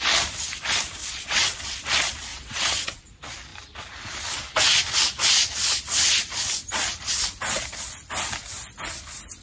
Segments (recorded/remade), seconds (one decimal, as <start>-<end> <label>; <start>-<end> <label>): 0.0-1.0 recorded; 1.0-1.8 remade; 1.8-2.3 recorded; 2.3-3.0 remade; 3.0-9.4 recorded